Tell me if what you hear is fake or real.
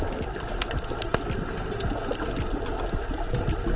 real